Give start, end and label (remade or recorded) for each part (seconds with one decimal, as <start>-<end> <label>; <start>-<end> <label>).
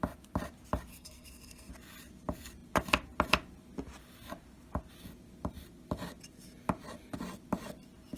0.0-0.9 recorded; 0.9-1.7 remade; 1.7-8.2 recorded